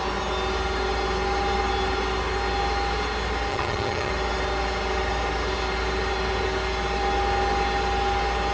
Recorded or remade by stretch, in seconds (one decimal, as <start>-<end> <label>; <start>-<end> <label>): 0.0-3.5 recorded; 3.5-4.1 remade; 4.1-8.5 recorded